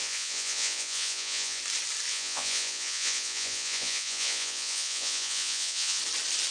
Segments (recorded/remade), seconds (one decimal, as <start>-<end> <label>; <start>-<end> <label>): 0.0-1.6 remade; 1.6-2.1 recorded; 2.1-6.0 remade; 6.0-6.5 recorded